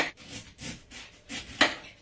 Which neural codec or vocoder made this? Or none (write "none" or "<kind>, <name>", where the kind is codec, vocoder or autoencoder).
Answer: none